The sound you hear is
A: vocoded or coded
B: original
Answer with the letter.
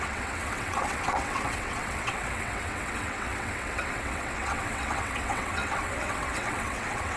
A